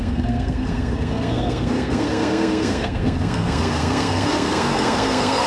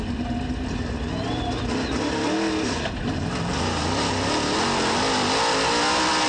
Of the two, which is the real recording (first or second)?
second